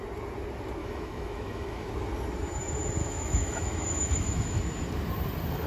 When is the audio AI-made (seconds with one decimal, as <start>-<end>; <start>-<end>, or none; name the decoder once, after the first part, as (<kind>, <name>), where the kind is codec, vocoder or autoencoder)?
0.8-1.9 (autoencoder, DAC-VAE); 3.0-4.6